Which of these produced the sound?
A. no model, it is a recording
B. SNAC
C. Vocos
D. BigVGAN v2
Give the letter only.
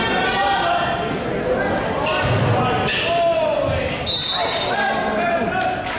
A